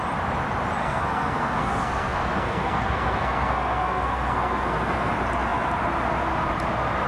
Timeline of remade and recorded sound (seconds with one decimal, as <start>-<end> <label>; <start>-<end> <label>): 0.0-0.8 recorded; 0.8-5.1 remade; 5.1-7.1 recorded

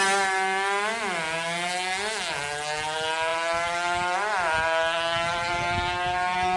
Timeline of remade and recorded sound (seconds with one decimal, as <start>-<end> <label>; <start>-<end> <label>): 0.0-6.6 recorded

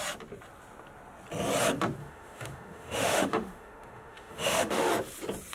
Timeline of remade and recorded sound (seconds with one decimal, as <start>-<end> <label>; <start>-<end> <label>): 0.0-2.0 recorded; 2.0-4.9 remade; 4.9-5.5 recorded